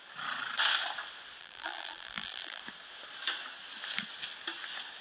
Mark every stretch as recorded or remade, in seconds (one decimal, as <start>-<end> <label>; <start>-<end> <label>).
0.0-1.4 recorded; 1.4-2.6 remade; 2.6-5.0 recorded